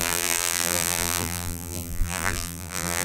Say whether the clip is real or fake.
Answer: fake